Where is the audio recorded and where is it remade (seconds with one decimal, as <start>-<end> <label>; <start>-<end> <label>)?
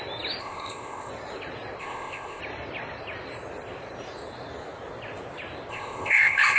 0.0-0.4 recorded; 0.4-1.1 remade; 1.1-1.8 recorded; 1.8-2.4 remade; 2.4-5.7 recorded; 5.7-6.6 remade